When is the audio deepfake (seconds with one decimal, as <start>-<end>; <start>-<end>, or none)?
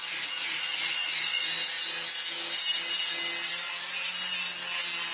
0.0-1.4